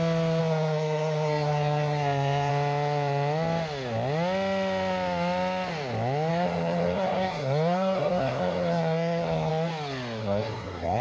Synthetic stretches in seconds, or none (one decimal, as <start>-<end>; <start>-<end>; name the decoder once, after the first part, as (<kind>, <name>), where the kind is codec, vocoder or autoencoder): 0.4-2.5 (codec, SNAC); 6.3-9.5; 10.2-11.0